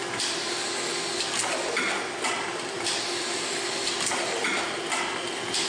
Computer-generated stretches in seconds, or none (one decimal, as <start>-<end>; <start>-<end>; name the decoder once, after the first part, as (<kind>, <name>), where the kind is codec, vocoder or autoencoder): none